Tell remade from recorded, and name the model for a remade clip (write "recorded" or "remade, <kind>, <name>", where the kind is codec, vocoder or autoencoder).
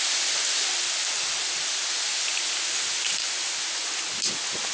recorded